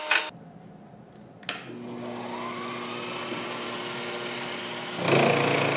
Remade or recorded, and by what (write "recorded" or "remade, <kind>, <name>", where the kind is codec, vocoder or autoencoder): recorded